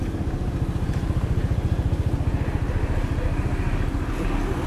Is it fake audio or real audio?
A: real